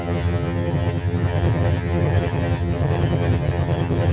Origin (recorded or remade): remade